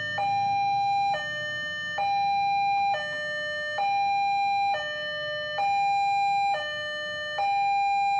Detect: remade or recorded recorded